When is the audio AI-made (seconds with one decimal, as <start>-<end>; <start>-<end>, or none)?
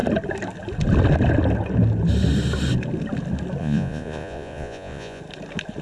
3.6-5.2